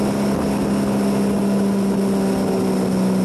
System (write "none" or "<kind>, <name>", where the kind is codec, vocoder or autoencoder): none